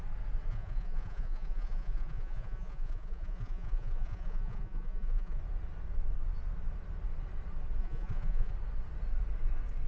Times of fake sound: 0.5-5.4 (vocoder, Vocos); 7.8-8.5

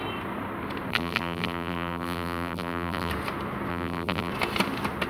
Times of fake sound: 0.9-3.1 (vocoder, BigVGAN v2); 3.7-4.3

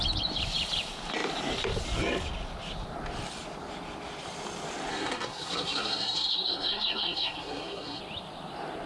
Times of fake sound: 4.9-8.0 (codec, SNAC)

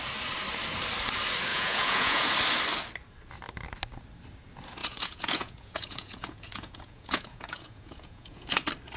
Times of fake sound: 1.5-2.3 (vocoder, Vocos); 4.8-8.6